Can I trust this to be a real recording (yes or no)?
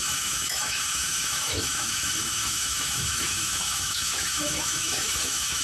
no